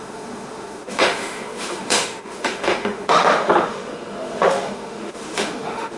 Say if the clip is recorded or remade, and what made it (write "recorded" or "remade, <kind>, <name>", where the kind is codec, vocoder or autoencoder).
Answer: remade, autoencoder, DAC-VAE